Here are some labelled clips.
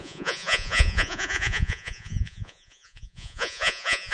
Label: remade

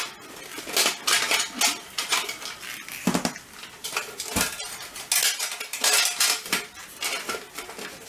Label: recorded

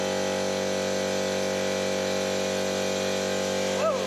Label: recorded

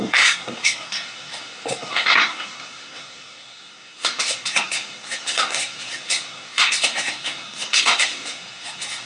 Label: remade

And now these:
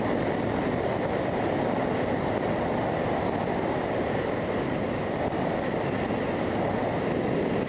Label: recorded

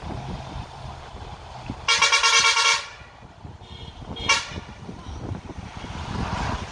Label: recorded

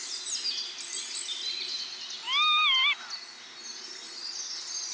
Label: recorded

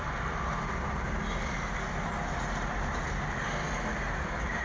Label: recorded